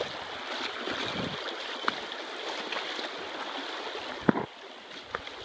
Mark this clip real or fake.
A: real